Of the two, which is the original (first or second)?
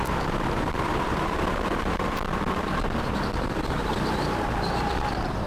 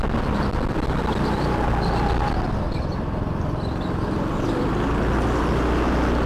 second